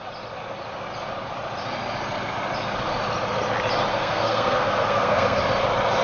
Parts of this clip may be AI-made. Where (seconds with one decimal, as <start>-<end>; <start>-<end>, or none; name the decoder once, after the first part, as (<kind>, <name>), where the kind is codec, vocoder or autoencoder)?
3.9-5.4 (codec, SNAC)